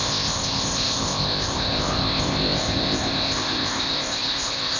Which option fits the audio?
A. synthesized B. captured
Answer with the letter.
A